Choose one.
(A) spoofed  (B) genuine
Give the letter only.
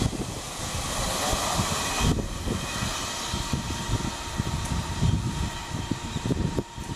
B